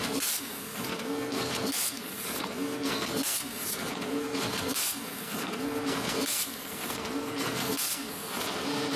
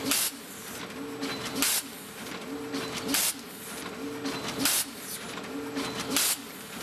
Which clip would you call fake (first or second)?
first